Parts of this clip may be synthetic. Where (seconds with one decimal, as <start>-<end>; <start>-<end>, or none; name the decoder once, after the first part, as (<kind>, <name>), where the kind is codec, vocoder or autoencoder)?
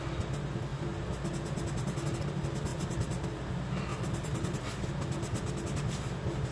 0.7-1.3 (vocoder, BigVGAN v2); 2.7-3.5; 3.9-4.6